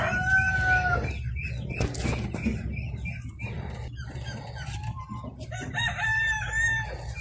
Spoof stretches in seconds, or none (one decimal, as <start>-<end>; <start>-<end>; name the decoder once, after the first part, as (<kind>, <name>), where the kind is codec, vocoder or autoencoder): none